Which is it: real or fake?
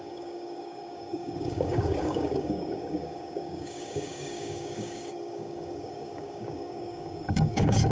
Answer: fake